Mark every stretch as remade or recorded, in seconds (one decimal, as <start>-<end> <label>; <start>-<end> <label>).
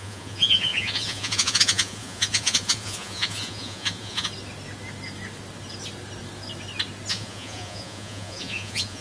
0.0-4.3 remade; 4.3-7.1 recorded; 7.1-9.0 remade